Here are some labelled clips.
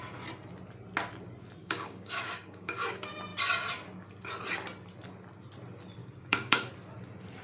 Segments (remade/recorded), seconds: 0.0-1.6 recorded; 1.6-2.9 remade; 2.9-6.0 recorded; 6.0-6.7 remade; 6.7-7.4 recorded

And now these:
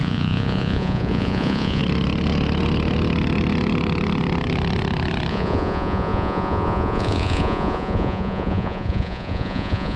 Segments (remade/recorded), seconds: 0.0-1.8 remade; 1.8-5.3 recorded; 5.3-10.0 remade

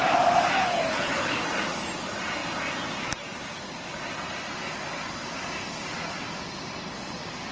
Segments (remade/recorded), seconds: 0.0-0.6 recorded; 0.6-1.4 remade; 1.4-7.5 recorded

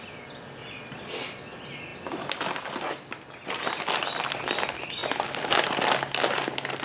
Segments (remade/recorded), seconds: 0.0-0.6 recorded; 0.6-1.1 remade; 1.1-6.8 recorded

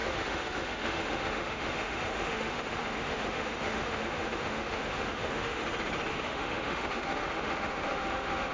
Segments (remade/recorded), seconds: 0.0-5.6 remade; 5.6-6.1 recorded; 6.1-8.5 remade

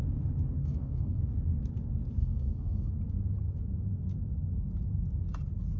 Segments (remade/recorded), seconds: 0.0-0.6 recorded; 0.6-1.2 remade; 1.2-2.2 recorded; 2.2-2.9 remade; 2.9-5.8 recorded

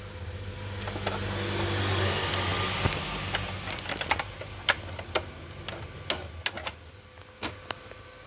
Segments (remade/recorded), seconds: 0.0-8.3 recorded

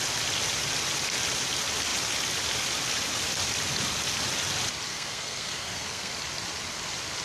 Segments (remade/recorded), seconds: 0.0-4.9 recorded; 4.9-6.1 remade; 6.1-7.2 recorded